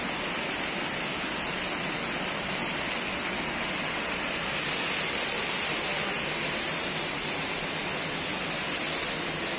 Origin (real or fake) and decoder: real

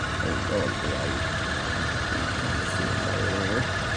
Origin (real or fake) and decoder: real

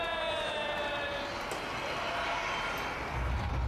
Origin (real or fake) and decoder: real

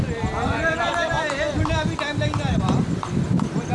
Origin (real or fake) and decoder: real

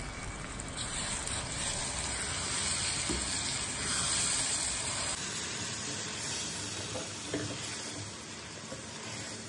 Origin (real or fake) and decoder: real